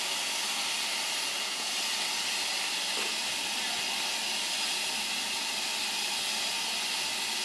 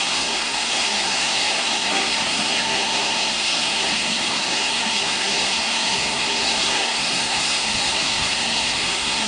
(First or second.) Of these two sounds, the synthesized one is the second